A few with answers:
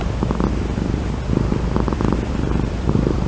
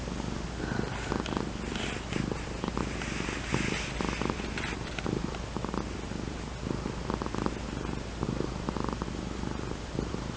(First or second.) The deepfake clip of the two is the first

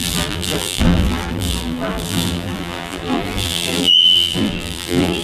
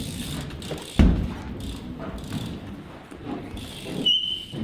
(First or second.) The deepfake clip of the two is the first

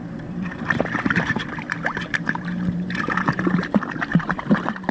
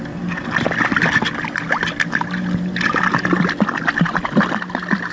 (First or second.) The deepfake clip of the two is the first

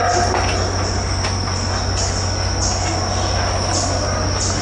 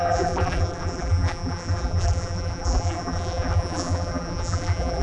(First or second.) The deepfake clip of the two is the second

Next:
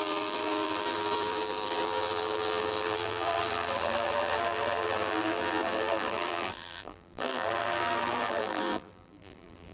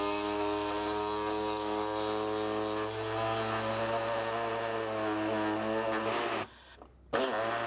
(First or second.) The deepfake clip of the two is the first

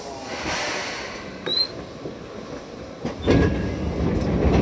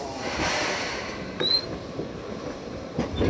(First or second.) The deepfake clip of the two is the second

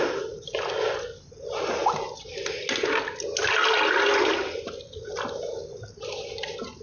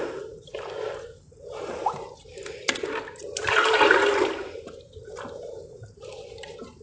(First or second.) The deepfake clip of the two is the second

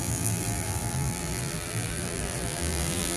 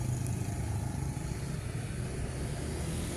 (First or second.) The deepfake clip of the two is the first